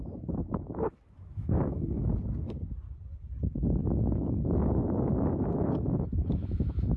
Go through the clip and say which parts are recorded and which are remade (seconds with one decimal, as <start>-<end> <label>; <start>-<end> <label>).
0.0-2.1 remade; 2.1-3.4 recorded; 3.4-7.0 remade